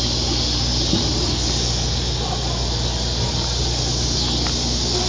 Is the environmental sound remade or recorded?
recorded